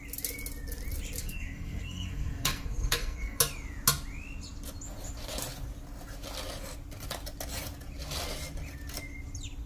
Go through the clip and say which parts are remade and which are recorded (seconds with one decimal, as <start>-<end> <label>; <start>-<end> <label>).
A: 0.0-1.2 recorded; 1.2-3.4 remade; 3.4-9.7 recorded